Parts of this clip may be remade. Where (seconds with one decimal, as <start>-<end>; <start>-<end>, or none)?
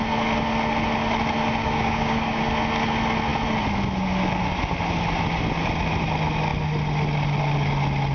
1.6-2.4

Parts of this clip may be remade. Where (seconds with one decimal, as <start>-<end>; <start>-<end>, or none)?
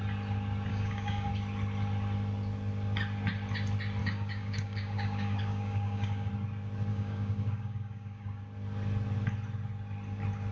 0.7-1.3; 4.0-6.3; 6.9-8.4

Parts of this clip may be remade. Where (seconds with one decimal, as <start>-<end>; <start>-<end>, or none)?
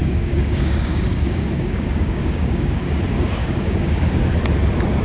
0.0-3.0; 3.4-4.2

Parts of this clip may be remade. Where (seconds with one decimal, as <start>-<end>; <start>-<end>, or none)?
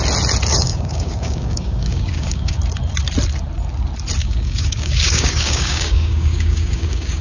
0.5-2.6; 4.2-7.2